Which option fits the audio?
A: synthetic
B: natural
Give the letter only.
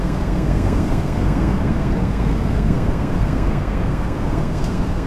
A